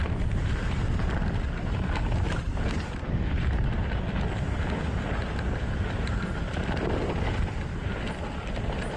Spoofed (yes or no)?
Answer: no